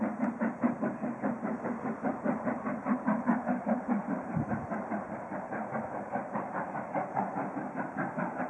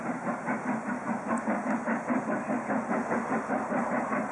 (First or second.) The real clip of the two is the second